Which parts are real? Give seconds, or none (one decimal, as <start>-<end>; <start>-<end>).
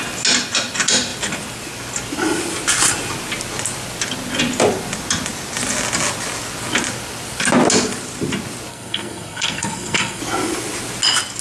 0.0-8.7; 10.2-11.4